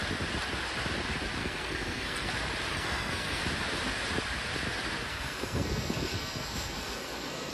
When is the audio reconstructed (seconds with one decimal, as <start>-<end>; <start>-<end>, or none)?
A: 1.4-2.3; 2.7-3.4; 5.1-7.5